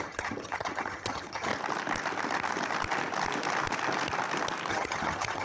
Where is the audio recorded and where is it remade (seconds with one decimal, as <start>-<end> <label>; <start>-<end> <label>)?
0.0-1.5 remade; 1.5-4.7 recorded; 4.7-5.4 remade